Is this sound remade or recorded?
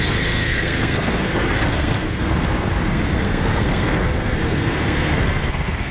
remade